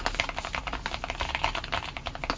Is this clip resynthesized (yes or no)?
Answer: no